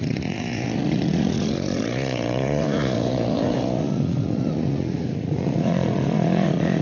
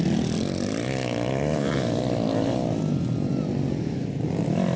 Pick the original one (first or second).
second